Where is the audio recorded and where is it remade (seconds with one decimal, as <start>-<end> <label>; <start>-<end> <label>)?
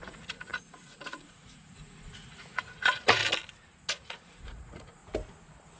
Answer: 0.0-3.2 remade; 3.2-3.9 recorded; 3.9-5.0 remade; 5.0-5.8 recorded